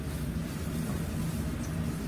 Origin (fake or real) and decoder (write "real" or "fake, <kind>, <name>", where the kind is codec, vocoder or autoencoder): real